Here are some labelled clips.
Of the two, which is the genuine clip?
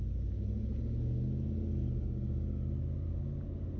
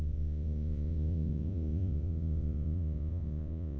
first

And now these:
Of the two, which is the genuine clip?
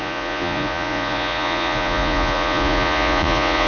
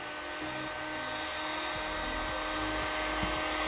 second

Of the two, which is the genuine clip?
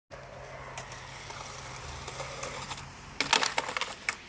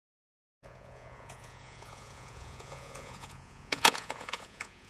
first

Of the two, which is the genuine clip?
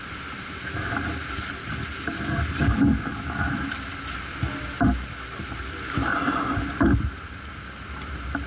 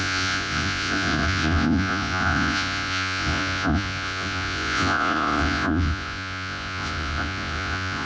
first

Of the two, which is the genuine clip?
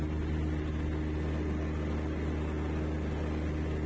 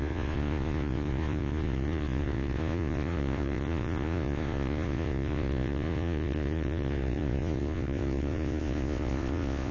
first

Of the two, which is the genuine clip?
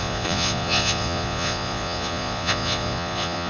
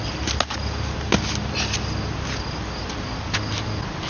second